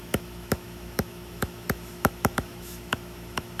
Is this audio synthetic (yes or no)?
yes